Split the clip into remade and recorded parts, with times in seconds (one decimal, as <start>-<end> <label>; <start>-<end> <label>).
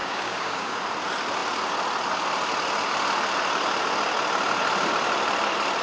0.0-0.8 remade; 0.8-5.8 recorded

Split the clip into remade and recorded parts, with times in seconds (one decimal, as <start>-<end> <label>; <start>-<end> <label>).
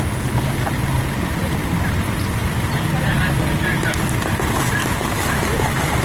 0.0-4.8 recorded; 4.8-5.4 remade; 5.4-6.0 recorded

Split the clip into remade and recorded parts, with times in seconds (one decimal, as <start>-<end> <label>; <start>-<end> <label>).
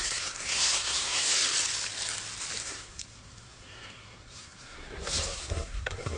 0.0-1.4 remade; 1.4-2.6 recorded; 2.6-6.2 remade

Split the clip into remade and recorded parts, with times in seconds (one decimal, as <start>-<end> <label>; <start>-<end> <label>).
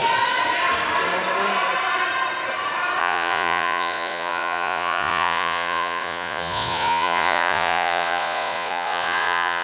0.0-3.0 recorded; 3.0-9.6 remade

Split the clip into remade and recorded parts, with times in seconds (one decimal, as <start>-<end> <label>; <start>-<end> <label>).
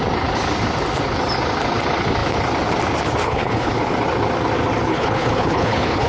0.0-3.2 recorded; 3.2-3.8 remade; 3.8-4.9 recorded; 4.9-6.1 remade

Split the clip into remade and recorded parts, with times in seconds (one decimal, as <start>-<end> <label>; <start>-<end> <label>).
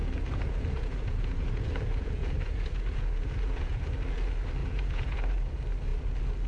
0.0-3.9 remade; 3.9-4.6 recorded; 4.6-5.2 remade; 5.2-6.5 recorded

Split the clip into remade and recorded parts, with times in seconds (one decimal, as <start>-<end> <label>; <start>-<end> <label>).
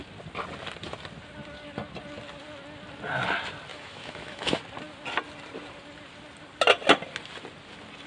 0.0-3.7 recorded; 3.7-4.6 remade; 4.6-8.1 recorded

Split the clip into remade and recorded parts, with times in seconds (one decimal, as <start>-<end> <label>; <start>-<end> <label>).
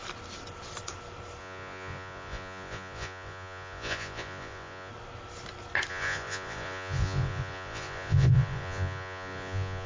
0.0-1.4 recorded; 1.4-4.9 remade; 4.9-5.9 recorded; 5.9-9.9 remade